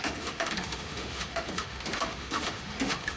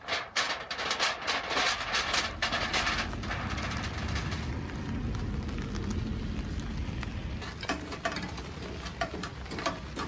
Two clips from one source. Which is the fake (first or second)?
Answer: first